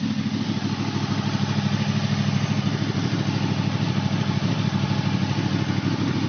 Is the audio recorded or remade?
recorded